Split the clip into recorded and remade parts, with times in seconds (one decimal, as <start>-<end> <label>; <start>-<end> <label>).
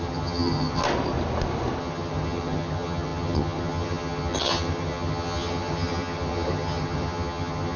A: 0.0-0.8 remade; 0.8-1.8 recorded; 1.8-7.8 remade